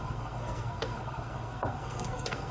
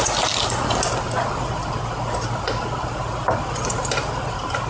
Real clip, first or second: second